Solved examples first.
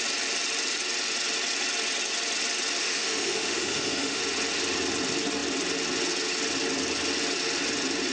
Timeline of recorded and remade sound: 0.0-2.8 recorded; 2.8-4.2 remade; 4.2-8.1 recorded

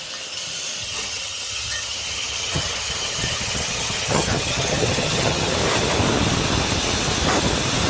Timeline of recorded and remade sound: 0.0-0.8 recorded; 0.8-5.5 remade; 5.5-7.9 recorded

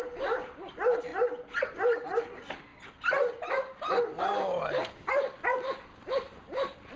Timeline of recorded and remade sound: 0.0-5.9 recorded; 5.9-7.0 remade